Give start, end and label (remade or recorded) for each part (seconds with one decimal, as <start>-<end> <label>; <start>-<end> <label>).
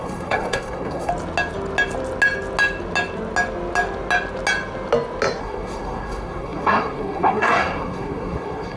0.0-1.1 remade; 1.1-5.4 recorded; 5.4-8.8 remade